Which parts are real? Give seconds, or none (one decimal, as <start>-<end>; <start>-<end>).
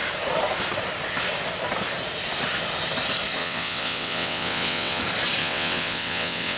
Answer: 0.0-3.4; 5.0-5.4